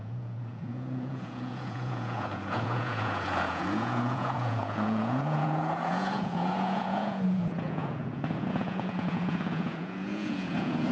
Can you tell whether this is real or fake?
fake